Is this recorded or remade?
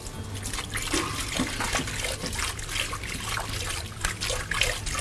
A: recorded